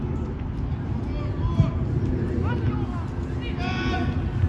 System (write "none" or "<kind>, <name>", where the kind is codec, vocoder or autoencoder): none